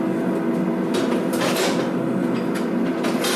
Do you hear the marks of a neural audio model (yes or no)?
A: no